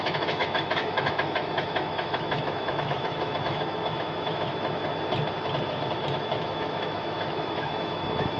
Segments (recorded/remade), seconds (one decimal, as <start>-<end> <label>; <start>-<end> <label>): 0.0-4.8 remade; 4.8-5.7 recorded; 5.7-8.4 remade